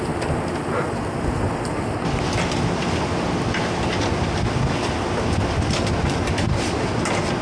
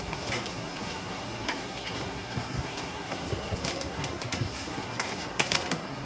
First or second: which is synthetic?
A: second